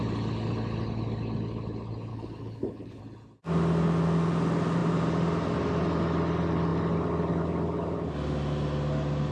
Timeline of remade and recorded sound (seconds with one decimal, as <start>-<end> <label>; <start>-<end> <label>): 0.0-2.1 recorded; 2.1-3.0 remade; 3.0-9.3 recorded